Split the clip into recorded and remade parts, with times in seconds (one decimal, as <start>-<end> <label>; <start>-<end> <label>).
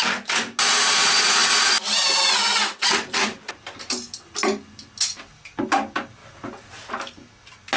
0.0-7.8 recorded